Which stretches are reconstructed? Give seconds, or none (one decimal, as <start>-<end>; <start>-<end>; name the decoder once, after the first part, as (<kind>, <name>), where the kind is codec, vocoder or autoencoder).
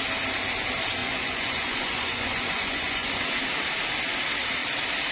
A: 1.0-3.4 (vocoder, Vocos)